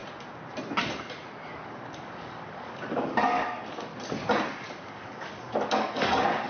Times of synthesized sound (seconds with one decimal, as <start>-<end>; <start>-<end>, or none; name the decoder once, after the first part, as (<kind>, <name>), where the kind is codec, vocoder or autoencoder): 1.5-3.9 (codec, DAC); 4.8-6.5